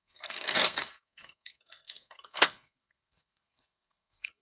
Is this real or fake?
fake